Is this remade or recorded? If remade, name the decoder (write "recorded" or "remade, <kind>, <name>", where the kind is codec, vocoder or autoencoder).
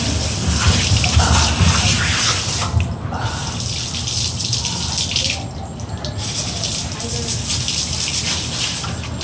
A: recorded